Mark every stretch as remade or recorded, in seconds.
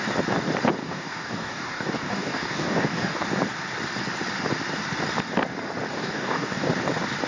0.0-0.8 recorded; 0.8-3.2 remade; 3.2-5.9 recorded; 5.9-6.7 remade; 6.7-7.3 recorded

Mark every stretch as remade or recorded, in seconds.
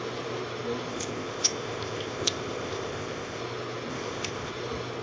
0.0-0.9 recorded; 0.9-3.4 remade; 3.4-3.9 recorded; 3.9-4.5 remade; 4.5-5.0 recorded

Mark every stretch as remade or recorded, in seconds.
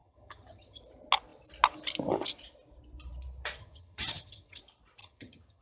0.0-0.8 remade; 0.8-3.6 recorded; 3.6-4.6 remade; 4.6-5.0 recorded; 5.0-5.6 remade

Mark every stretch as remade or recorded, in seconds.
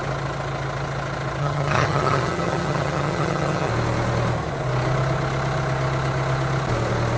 0.0-1.4 recorded; 1.4-3.7 remade; 3.7-7.2 recorded